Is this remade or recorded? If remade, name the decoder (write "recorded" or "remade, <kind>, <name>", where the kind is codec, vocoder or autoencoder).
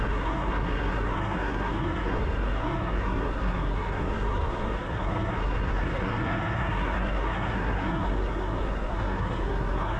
remade, codec, SNAC